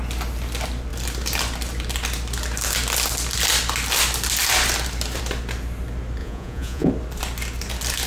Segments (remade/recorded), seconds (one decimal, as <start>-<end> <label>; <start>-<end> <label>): 0.0-6.2 recorded; 6.2-6.9 remade; 6.9-8.1 recorded